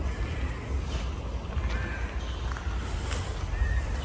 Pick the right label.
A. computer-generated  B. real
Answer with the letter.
B